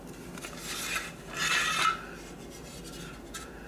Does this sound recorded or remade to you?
recorded